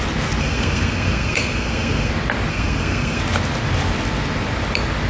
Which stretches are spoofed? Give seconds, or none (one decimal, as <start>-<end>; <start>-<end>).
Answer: 0.4-2.1; 2.5-3.2